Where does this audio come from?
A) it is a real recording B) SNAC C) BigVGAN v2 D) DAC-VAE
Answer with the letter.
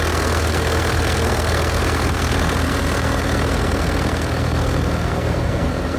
B